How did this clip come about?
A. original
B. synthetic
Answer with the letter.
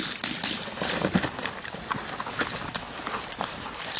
A